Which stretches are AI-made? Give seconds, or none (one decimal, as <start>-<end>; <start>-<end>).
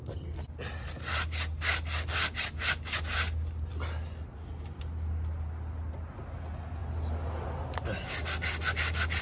none